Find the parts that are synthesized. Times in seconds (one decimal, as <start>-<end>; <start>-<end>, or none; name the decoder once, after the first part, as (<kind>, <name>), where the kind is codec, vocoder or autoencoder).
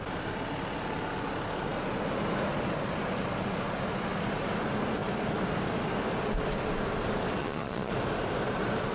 7.4-7.9 (vocoder, Vocos)